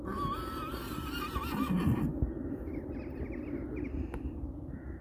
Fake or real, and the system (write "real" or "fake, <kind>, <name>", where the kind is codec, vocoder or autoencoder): real